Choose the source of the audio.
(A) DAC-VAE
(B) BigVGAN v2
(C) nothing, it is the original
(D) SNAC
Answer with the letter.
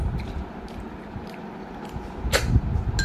C